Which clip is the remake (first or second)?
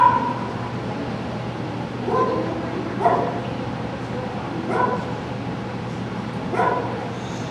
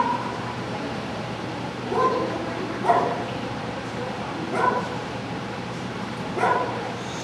second